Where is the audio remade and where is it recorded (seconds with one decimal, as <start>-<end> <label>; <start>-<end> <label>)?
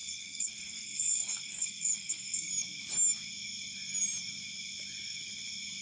0.0-2.5 remade; 2.5-5.8 recorded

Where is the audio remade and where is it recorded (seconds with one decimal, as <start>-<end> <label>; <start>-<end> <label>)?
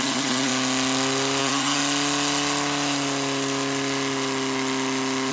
0.0-0.5 remade; 0.5-1.4 recorded; 1.4-1.8 remade; 1.8-5.3 recorded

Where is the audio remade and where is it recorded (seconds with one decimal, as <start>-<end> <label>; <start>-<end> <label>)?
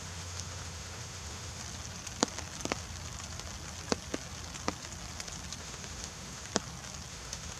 0.0-1.6 remade; 1.6-5.6 recorded; 5.6-6.5 remade; 6.5-7.1 recorded; 7.1-7.6 remade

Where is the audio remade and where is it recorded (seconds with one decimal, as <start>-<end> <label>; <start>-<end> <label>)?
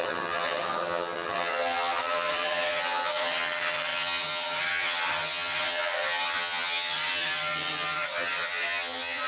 0.0-9.3 remade